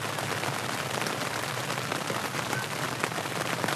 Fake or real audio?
real